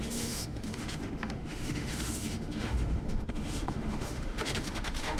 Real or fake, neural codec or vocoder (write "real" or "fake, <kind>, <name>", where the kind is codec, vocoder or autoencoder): fake, autoencoder, DAC-VAE